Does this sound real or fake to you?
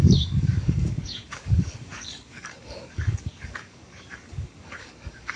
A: fake